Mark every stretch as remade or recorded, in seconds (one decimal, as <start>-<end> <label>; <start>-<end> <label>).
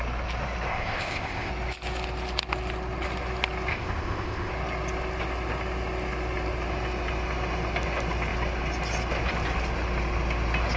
0.0-0.7 recorded; 0.7-1.5 remade; 1.5-3.7 recorded; 3.7-4.5 remade; 4.5-10.8 recorded